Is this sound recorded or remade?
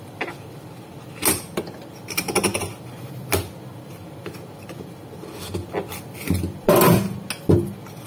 recorded